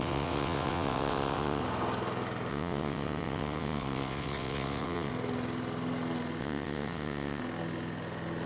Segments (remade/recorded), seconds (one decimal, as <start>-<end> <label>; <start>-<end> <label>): 0.0-1.6 remade; 1.6-2.5 recorded; 2.5-5.1 remade; 5.1-6.4 recorded; 6.4-7.4 remade; 7.4-8.5 recorded